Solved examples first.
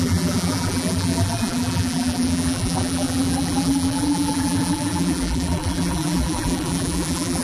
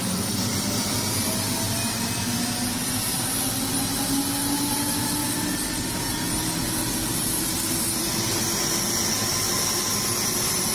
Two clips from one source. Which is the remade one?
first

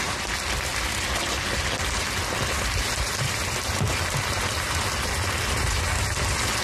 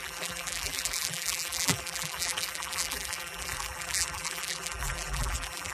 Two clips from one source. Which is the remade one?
second